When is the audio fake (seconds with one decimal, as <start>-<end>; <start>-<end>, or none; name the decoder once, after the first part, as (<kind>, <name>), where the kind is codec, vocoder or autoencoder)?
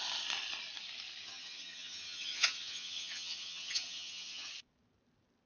1.2-4.5 (vocoder, HiFi-GAN)